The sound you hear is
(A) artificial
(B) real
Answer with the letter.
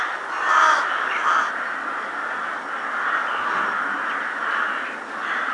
B